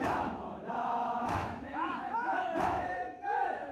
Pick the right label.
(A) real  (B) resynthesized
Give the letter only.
B